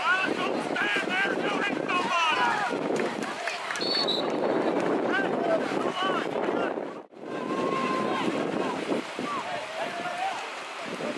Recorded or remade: remade